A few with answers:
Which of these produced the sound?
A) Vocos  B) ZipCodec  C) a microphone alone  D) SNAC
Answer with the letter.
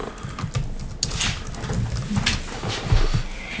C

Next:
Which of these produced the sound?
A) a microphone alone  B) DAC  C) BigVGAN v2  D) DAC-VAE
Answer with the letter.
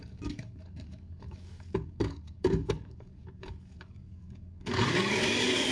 B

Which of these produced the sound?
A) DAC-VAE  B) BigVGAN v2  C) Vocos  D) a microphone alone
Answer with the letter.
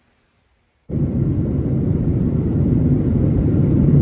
B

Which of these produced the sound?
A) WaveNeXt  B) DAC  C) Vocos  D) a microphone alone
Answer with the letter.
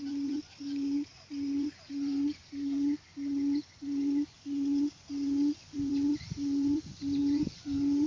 C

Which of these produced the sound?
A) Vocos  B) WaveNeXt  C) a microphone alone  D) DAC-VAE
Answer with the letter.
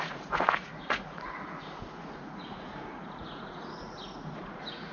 A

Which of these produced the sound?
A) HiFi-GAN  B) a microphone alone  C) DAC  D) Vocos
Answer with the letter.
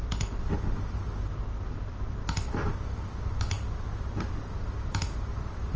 B